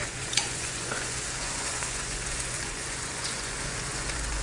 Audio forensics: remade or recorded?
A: remade